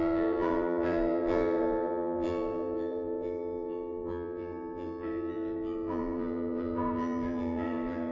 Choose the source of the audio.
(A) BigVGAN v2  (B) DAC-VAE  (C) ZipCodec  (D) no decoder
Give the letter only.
A